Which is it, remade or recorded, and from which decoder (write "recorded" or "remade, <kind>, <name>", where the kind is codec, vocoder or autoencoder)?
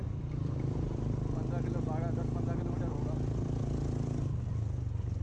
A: recorded